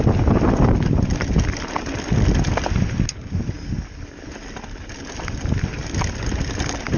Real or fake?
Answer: real